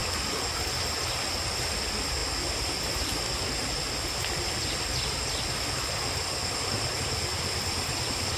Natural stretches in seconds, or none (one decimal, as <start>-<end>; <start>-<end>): 0.0-8.4